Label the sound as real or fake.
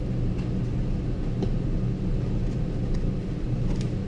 real